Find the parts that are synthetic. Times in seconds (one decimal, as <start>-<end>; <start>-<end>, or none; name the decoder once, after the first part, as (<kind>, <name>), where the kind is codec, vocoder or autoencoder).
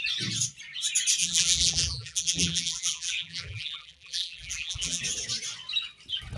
1.2-5.0 (vocoder, BigVGAN v2)